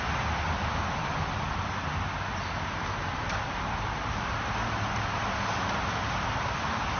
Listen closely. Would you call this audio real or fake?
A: real